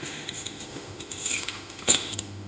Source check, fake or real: fake